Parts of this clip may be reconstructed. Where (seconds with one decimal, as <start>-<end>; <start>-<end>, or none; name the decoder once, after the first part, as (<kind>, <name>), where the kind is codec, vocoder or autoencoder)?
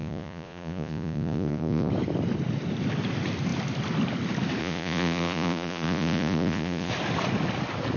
0.0-1.9 (vocoder, Vocos); 4.6-6.9